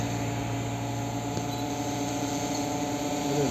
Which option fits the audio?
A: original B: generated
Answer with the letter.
A